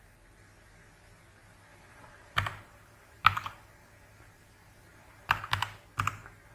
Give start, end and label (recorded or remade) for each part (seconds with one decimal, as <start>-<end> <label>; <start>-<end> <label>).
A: 0.0-1.7 recorded; 1.7-5.4 remade; 5.4-6.5 recorded